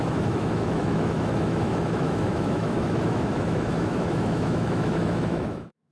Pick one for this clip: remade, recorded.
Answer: remade